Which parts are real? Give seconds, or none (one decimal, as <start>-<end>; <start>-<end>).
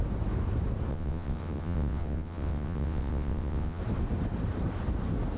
0.0-0.9; 3.8-5.4